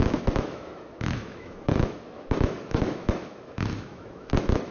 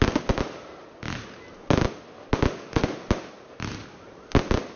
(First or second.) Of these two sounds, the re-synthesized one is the first